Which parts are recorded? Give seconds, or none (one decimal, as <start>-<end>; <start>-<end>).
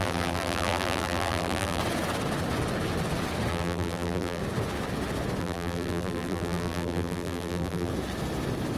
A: 1.8-3.5; 4.4-5.4; 7.9-8.8